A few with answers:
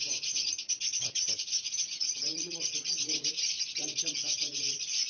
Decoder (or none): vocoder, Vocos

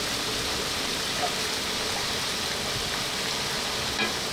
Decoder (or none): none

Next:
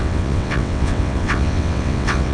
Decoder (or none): vocoder, WaveNeXt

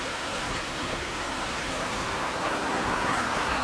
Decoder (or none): codec, SNAC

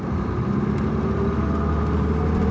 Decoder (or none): none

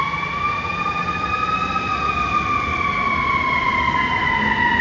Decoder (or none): none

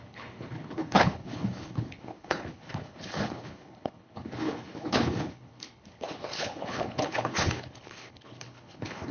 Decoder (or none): codec, HILCodec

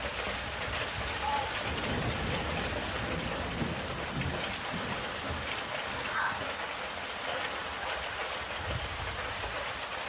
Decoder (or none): none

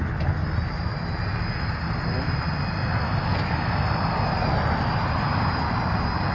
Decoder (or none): none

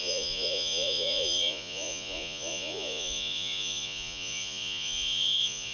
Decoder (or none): vocoder, Vocos